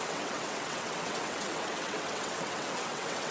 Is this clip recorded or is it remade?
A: remade